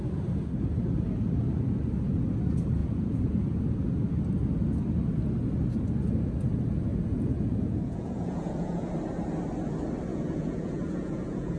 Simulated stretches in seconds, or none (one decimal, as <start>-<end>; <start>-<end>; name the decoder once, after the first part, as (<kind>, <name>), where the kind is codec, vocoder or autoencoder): 2.8-3.6 (vocoder, Vocos); 6.9-8.9; 10.1-11.6